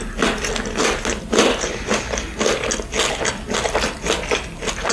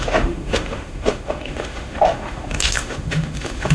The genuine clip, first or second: first